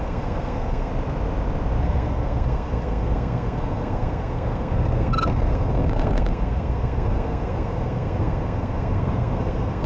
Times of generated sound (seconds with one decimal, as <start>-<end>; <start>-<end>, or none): 0.0-0.9; 1.8-9.9